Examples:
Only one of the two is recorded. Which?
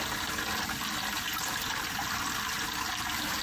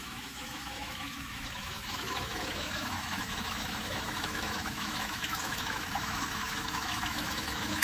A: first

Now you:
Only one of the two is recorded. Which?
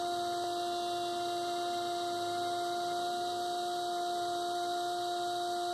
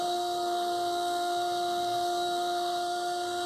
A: first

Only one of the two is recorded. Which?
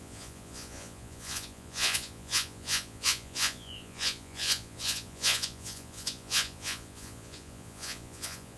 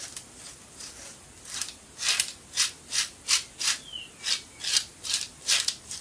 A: second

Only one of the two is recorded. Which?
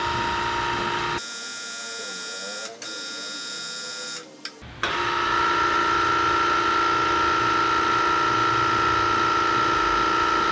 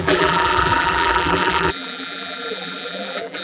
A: first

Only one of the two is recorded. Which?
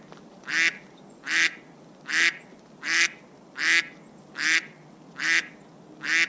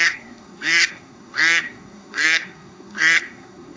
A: first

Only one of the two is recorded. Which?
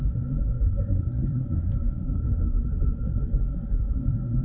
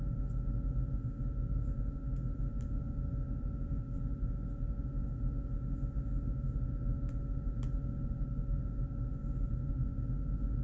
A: second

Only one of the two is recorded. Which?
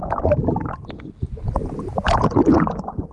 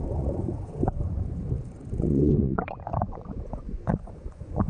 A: first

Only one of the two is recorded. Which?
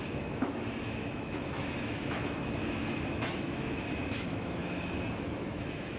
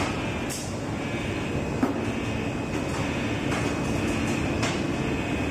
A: second